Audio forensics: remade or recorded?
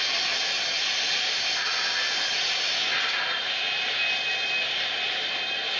recorded